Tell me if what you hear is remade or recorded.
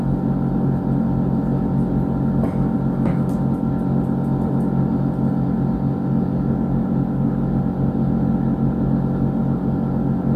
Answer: recorded